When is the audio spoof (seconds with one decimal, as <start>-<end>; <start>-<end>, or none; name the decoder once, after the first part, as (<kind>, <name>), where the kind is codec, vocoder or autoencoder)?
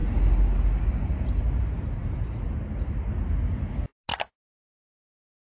none